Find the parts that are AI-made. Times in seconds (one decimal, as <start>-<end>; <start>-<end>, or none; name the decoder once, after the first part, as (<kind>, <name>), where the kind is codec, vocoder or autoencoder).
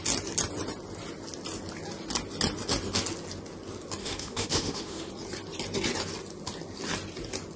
4.0-5.1 (autoencoder, DAC-VAE)